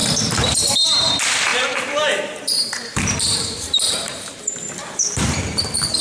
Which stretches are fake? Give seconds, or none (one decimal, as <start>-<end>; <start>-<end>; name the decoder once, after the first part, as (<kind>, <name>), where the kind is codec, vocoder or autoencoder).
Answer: 0.0-6.0 (vocoder, BigVGAN v2)